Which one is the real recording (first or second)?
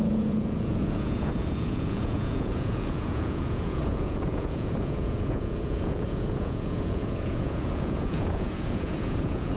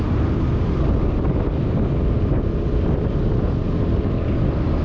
second